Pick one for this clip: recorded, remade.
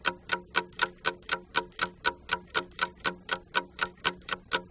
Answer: recorded